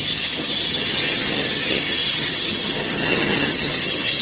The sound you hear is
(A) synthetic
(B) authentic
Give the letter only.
A